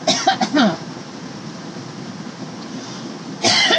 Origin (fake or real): real